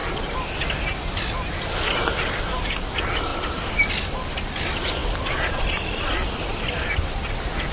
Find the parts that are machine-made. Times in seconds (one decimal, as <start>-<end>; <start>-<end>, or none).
1.9-7.7